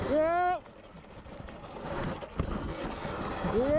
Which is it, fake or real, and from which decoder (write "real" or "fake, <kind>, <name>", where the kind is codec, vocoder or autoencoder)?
real